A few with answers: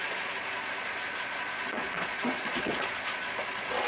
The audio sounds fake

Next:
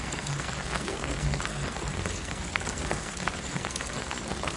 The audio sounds fake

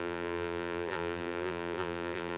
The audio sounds fake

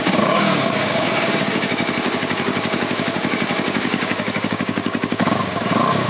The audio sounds fake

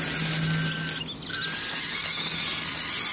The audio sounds real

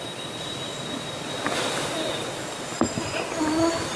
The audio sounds real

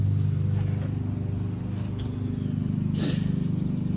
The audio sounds real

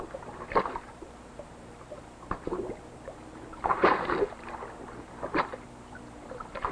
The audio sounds fake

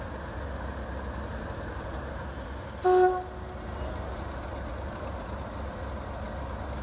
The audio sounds real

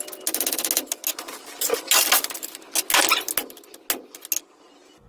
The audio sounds real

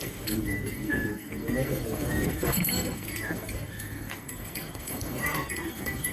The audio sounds fake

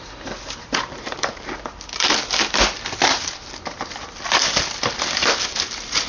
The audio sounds real